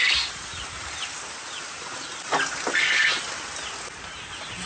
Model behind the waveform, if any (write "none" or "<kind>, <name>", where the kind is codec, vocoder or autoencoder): none